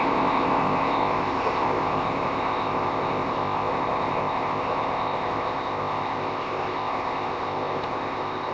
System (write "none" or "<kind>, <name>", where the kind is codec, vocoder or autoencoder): codec, ZipCodec